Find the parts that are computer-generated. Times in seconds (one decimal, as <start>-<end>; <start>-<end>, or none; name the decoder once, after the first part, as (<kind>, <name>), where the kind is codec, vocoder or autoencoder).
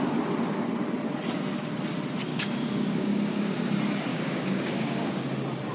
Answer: 2.3-3.5 (codec, DAC); 4.1-5.2